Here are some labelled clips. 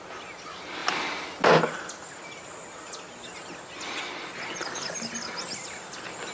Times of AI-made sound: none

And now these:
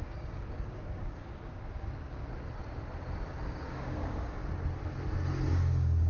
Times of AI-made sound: 0.0-2.3; 3.5-4.4; 5.5-6.1

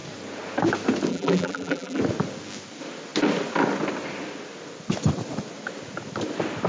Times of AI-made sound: 1.1-2.0

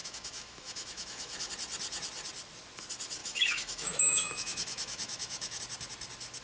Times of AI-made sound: 0.0-1.5; 3.2-5.6

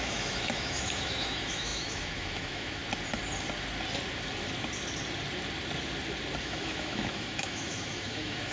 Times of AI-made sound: 0.0-2.8; 6.4-8.5